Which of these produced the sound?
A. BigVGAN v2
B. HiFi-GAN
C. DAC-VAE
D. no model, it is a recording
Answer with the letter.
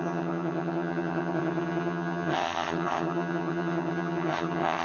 B